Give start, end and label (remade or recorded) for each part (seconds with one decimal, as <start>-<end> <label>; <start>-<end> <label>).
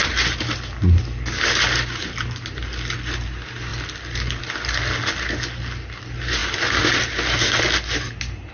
0.0-8.5 recorded